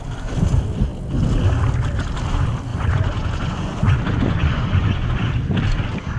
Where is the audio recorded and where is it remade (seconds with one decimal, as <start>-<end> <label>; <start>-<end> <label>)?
0.0-2.7 recorded; 2.7-5.3 remade; 5.3-6.2 recorded